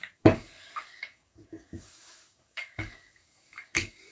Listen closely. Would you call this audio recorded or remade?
remade